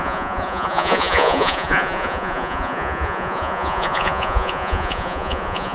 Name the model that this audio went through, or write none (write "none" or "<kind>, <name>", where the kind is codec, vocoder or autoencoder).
vocoder, Vocos